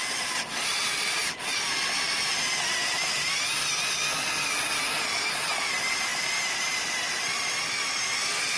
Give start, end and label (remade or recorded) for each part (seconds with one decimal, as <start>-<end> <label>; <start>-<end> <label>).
0.0-1.2 remade; 1.2-8.6 recorded